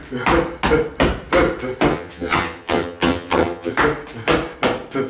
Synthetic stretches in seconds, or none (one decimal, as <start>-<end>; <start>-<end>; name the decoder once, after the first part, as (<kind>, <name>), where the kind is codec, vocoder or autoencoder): 1.9-3.7 (vocoder, HiFi-GAN)